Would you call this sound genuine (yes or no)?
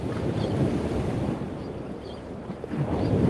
no